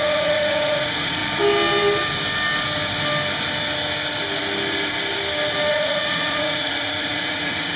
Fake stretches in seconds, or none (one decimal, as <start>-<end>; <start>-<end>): 0.0-1.2; 5.7-7.8

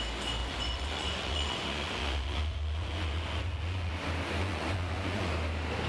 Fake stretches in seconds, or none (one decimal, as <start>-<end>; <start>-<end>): 0.4-3.9; 4.4-5.3

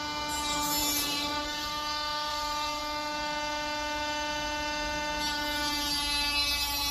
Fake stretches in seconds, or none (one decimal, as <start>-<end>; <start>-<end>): 0.8-1.7; 2.3-2.8

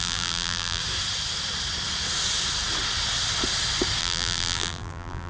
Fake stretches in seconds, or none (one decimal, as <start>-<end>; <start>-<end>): 0.0-0.8; 4.0-5.3

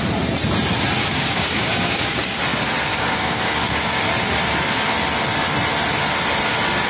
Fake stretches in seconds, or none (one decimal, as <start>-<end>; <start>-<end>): 1.0-2.4; 2.9-4.0

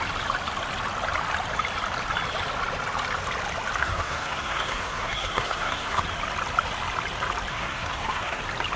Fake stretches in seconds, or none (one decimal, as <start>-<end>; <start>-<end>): 3.8-6.0; 7.5-8.4

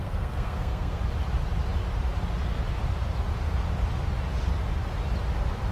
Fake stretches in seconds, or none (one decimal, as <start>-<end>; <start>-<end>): 0.0-1.0

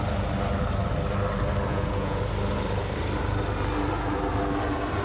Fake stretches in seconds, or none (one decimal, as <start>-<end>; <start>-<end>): 1.7-2.2